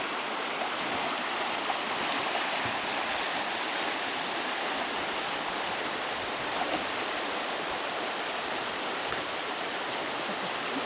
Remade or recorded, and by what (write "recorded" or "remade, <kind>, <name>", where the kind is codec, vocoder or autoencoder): remade, vocoder, BigVGAN v2